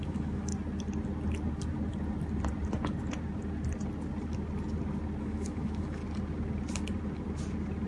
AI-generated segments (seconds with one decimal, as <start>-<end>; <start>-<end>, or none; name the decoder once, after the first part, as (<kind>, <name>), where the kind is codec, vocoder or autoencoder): 0.0-0.5 (autoencoder, DAC-VAE); 5.2-6.0